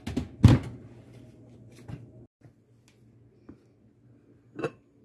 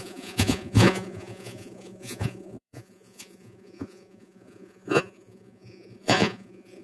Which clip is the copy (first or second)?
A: second